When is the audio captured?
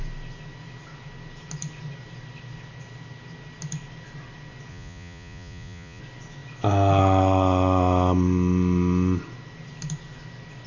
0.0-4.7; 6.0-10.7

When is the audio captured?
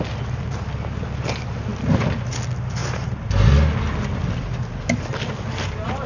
0.0-2.8; 3.5-6.1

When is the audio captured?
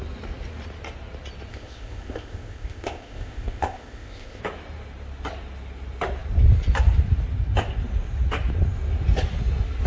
0.0-1.5; 4.4-9.9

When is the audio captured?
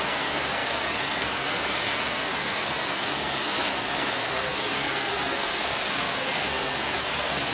none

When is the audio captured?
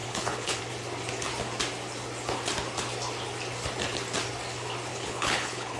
0.6-4.9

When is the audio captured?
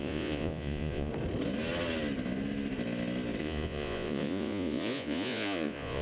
1.1-3.4